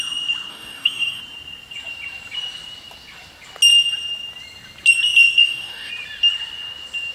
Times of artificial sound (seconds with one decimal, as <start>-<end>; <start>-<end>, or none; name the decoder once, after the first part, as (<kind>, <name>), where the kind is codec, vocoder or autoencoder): 0.5-1.2 (codec, DAC); 5.4-5.9